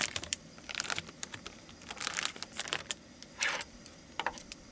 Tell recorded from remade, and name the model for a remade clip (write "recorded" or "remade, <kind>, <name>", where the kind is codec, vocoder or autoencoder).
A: remade, vocoder, BigVGAN v2